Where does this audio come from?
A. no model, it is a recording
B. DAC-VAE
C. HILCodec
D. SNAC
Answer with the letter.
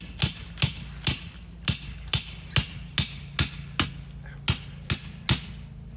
A